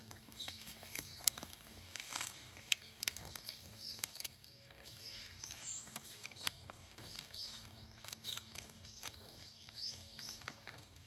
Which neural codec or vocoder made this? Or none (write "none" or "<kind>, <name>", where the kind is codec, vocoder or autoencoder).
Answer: codec, DAC